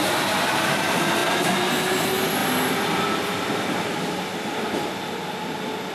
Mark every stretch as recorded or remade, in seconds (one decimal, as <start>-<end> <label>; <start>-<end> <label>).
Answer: 0.0-5.9 recorded